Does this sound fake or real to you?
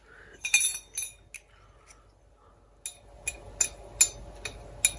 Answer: real